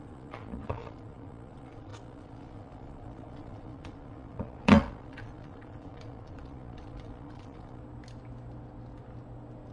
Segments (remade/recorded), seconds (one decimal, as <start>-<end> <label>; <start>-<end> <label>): 0.0-7.8 remade; 7.8-9.7 recorded